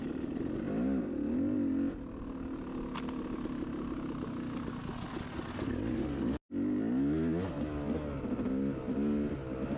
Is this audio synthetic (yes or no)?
no